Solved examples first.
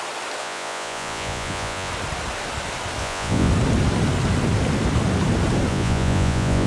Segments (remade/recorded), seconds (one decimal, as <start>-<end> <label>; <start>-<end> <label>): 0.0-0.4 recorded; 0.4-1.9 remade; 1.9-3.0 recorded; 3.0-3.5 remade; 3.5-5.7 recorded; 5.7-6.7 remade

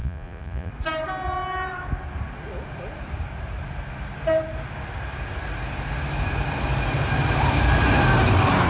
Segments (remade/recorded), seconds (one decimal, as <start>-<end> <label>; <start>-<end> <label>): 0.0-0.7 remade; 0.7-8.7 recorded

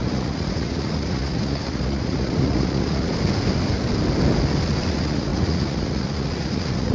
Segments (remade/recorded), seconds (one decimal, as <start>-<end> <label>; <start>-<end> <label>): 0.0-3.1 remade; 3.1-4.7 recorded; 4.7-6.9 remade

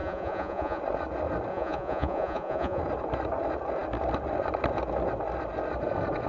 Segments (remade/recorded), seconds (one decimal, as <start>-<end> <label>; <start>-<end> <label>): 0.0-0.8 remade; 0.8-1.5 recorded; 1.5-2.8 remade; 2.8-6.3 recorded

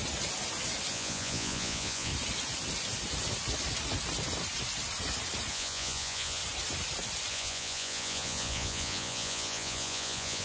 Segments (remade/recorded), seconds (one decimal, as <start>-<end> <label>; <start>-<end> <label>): 0.0-0.9 recorded; 0.9-2.1 remade; 2.1-5.5 recorded; 5.5-6.4 remade; 6.4-7.3 recorded; 7.3-10.4 remade

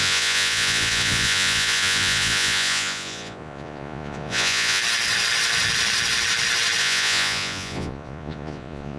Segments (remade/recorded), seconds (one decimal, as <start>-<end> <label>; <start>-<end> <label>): 0.0-4.8 remade; 4.8-6.8 recorded; 6.8-9.0 remade